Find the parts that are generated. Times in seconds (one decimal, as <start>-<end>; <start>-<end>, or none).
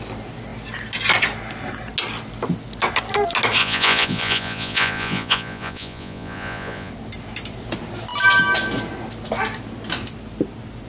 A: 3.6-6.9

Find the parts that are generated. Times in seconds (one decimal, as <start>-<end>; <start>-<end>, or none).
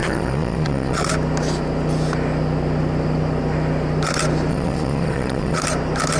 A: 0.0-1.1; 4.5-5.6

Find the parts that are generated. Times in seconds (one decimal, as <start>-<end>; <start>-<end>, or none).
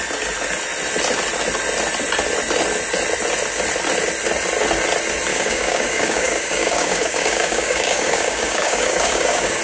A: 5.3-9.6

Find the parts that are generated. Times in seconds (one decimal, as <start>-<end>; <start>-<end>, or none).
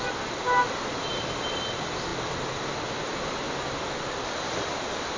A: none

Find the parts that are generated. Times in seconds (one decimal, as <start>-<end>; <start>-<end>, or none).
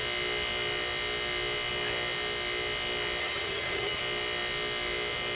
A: 3.2-4.0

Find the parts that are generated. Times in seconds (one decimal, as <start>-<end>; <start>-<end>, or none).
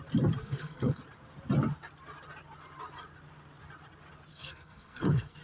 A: 0.4-1.0; 4.3-5.4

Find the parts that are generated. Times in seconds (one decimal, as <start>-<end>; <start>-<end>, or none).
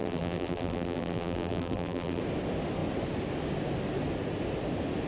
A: 0.0-2.2